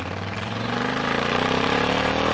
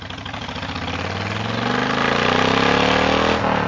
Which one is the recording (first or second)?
second